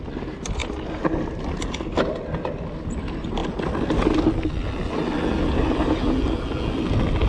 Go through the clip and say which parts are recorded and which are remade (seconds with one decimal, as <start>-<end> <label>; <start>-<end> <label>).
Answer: 0.0-7.3 recorded

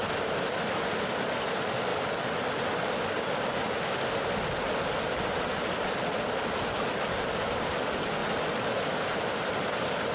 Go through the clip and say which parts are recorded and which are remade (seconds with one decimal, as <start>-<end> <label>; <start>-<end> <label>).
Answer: 0.0-10.1 recorded